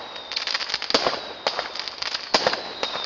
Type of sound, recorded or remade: recorded